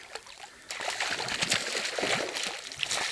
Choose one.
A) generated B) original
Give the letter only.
B